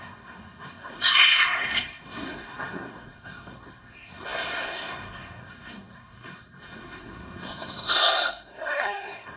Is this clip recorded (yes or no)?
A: no